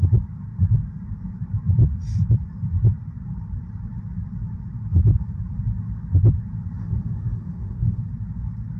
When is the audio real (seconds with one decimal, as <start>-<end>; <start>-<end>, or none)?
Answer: 0.0-6.8; 8.0-8.8

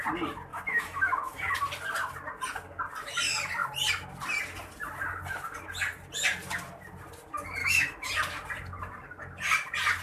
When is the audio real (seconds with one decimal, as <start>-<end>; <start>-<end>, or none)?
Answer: 0.0-0.5; 1.6-7.6; 8.1-10.0

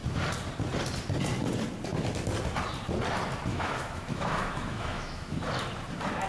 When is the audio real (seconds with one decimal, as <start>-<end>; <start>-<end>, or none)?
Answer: 0.0-3.5; 5.5-6.3

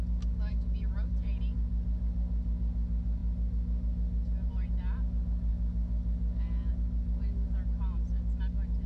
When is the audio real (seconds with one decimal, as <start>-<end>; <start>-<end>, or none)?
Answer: 0.0-8.9

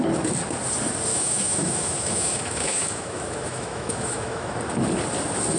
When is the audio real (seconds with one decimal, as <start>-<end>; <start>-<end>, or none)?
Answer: 0.0-1.1; 4.5-5.6